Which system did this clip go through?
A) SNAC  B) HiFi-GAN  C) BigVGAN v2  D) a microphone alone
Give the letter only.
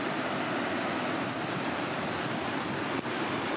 D